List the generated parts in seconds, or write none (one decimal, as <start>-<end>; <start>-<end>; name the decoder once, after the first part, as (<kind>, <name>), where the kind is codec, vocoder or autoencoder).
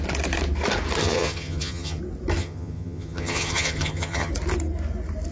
1.0-2.0 (vocoder, HiFi-GAN); 2.4-4.3